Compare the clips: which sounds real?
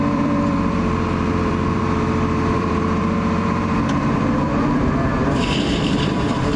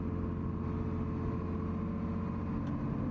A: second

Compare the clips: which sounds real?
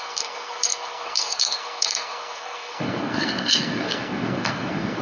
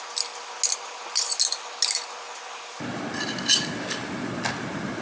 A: second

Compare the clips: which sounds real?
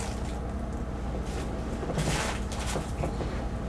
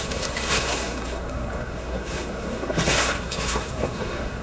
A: first